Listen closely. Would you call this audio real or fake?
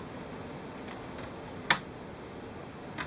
real